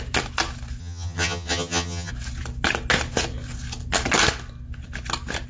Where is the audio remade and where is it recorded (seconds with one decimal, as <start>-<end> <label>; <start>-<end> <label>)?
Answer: 0.0-0.8 recorded; 0.8-2.1 remade; 2.1-5.5 recorded